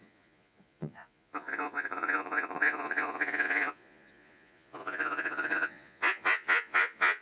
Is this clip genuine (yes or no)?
no